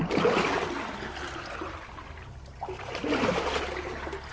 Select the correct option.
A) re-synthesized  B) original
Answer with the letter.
B